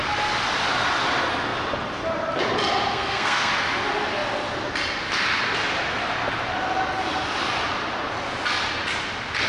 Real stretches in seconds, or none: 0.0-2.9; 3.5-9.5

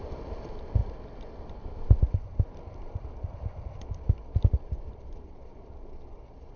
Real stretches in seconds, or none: 0.0-6.6

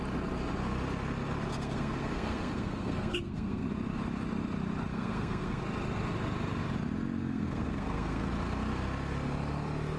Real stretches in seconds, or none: 0.0-1.5; 3.7-4.9; 5.6-7.2; 8.3-10.0

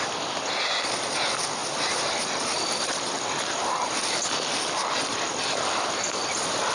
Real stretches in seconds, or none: 0.0-6.7

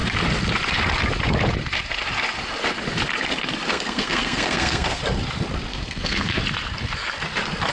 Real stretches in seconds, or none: 0.0-3.7; 5.0-5.7; 6.4-7.7